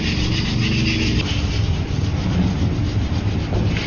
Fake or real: real